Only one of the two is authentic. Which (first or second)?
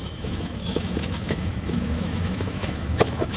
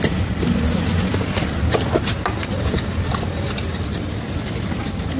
second